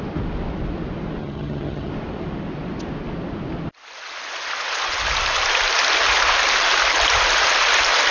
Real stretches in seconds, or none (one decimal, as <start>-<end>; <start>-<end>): 0.0-1.2; 1.9-8.1

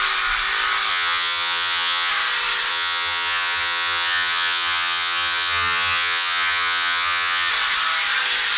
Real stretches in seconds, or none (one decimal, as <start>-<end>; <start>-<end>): 0.0-0.9; 2.1-2.7; 7.5-8.6

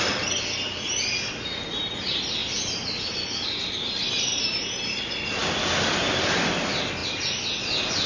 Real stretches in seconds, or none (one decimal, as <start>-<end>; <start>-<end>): 0.0-8.1

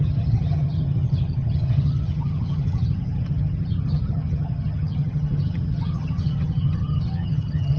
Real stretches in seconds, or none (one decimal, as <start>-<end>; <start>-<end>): none

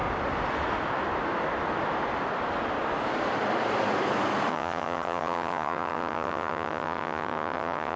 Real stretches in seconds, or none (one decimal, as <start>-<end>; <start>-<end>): 0.0-4.5

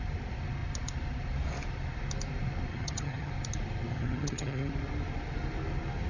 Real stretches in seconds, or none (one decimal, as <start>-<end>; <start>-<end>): 0.0-2.7; 3.3-3.9; 4.7-6.1

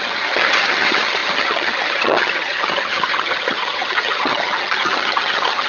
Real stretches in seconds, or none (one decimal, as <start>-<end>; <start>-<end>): none

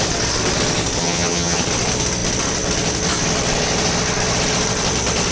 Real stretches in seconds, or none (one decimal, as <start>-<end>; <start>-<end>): 0.0-1.0; 1.6-5.3